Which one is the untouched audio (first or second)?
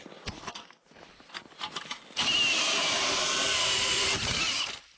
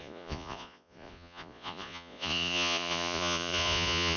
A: first